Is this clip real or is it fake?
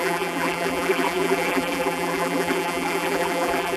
fake